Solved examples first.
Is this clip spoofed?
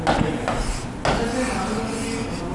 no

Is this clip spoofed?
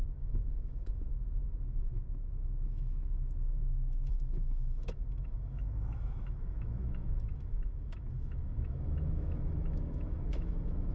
yes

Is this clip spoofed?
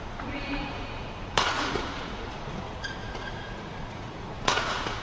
yes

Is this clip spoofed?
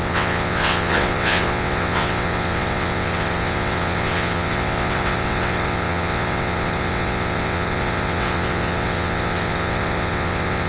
yes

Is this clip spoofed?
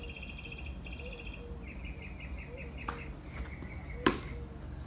no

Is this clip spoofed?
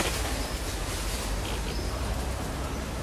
no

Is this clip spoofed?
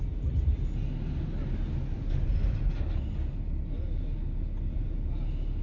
no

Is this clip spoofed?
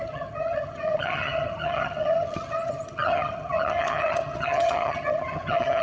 yes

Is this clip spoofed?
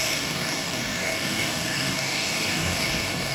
yes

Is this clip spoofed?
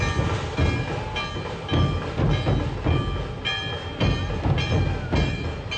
no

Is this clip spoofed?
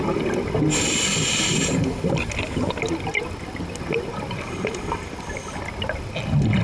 no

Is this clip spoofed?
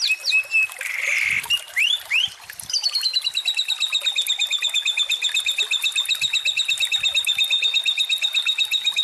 no